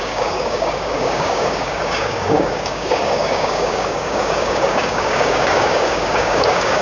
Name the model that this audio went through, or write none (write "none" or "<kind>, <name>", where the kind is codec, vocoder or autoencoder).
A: codec, DAC